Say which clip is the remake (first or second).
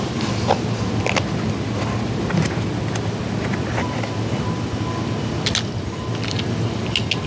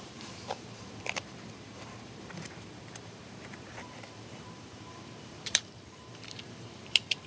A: second